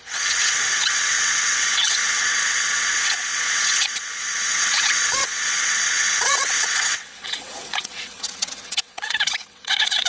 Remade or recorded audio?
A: remade